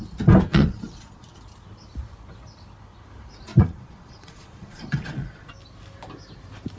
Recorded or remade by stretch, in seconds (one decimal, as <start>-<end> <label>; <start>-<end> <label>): 0.0-0.5 recorded; 0.5-1.4 remade; 1.4-3.5 recorded; 3.5-5.5 remade; 5.5-6.8 recorded

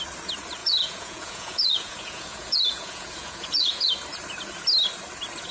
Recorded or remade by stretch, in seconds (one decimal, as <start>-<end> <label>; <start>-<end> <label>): 0.0-0.6 recorded; 0.6-3.9 remade; 3.9-5.5 recorded

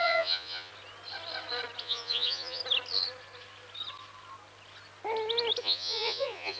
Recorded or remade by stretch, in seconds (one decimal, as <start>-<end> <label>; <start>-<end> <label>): 0.0-0.7 remade; 0.7-1.8 recorded; 1.8-2.6 remade; 2.6-5.6 recorded; 5.6-6.6 remade